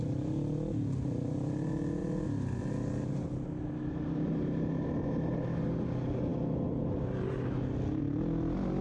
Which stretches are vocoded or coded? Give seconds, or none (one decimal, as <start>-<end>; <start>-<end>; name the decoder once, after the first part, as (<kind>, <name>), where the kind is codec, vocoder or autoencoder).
none

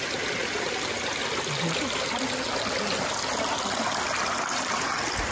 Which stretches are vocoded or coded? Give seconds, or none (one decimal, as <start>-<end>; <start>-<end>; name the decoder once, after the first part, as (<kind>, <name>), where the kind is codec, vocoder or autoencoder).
none

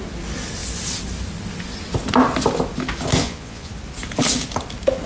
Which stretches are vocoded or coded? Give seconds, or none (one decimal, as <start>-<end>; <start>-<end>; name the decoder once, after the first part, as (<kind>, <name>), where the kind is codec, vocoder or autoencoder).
3.2-3.7 (vocoder, Vocos)

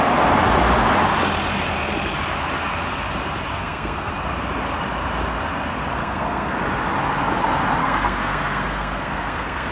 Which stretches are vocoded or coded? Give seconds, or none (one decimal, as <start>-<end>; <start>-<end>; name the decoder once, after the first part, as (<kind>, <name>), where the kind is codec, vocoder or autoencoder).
3.5-4.1 (codec, SNAC); 6.0-6.5; 7.8-9.7

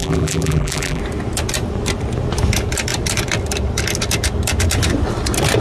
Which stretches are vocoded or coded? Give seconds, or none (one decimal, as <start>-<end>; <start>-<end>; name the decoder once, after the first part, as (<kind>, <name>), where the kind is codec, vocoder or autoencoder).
0.0-1.0 (vocoder, BigVGAN v2)

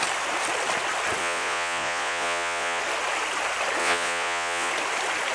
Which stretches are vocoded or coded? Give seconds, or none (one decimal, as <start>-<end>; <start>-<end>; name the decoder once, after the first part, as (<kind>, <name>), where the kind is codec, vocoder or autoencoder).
1.2-2.8 (vocoder, Vocos); 3.8-4.7